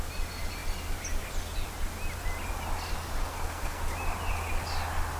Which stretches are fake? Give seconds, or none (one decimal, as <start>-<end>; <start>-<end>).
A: 3.2-3.8